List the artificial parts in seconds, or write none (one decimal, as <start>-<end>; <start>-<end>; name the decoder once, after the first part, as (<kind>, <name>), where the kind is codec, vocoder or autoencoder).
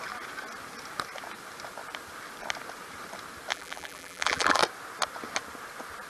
3.5-4.6 (vocoder, BigVGAN v2)